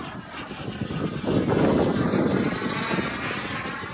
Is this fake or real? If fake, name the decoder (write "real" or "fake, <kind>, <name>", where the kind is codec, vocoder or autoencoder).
real